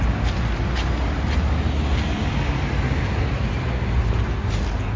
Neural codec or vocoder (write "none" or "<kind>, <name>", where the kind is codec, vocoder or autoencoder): none